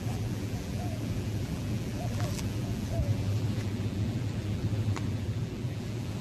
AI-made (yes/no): yes